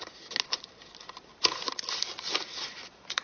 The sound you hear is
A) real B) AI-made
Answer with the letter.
A